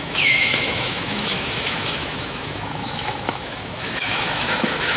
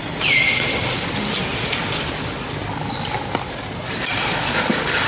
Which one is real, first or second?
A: second